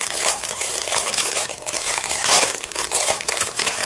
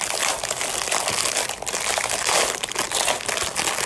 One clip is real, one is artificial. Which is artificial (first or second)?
first